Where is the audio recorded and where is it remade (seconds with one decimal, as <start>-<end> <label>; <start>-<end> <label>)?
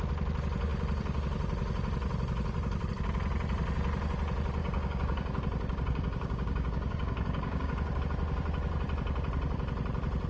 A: 0.0-4.6 recorded; 4.6-8.0 remade; 8.0-10.3 recorded